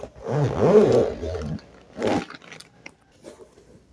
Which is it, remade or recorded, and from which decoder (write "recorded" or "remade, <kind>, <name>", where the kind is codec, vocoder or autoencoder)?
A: recorded